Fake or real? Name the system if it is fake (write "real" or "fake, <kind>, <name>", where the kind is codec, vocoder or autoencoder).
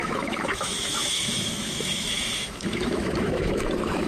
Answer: fake, autoencoder, DAC-VAE